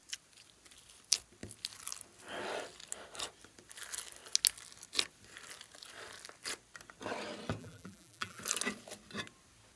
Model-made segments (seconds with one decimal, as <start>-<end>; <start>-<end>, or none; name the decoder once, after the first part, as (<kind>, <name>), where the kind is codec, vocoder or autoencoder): 7.6-8.4 (vocoder, BigVGAN v2)